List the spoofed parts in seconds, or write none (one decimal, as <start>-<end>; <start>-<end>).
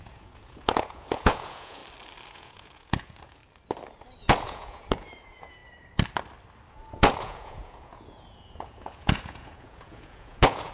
0.0-1.8; 2.3-3.4; 4.2-5.6; 6.7-10.7